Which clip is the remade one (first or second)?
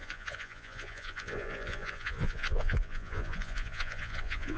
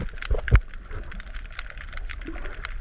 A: first